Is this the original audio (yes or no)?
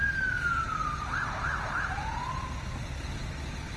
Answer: yes